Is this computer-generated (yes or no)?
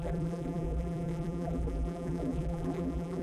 yes